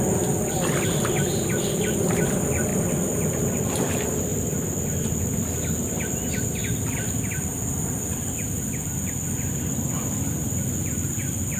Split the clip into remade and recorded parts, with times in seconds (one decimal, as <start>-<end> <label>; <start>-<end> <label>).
0.0-11.6 recorded